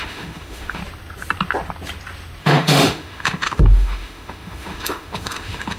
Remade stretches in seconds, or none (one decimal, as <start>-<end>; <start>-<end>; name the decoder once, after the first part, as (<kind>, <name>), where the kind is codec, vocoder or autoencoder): 0.0-0.8 (autoencoder, DAC-VAE); 2.4-5.8